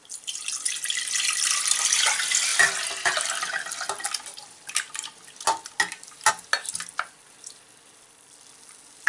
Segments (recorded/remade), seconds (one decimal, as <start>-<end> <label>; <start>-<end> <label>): 0.0-9.1 recorded